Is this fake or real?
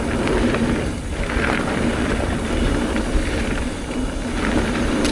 real